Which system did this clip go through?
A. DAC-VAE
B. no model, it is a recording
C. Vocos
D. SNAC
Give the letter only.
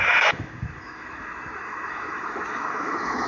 A